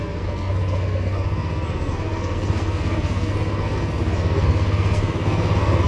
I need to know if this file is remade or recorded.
remade